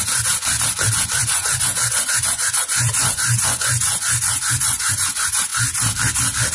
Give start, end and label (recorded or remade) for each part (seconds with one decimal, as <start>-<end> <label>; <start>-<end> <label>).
0.0-1.2 recorded; 1.2-5.1 remade; 5.1-6.5 recorded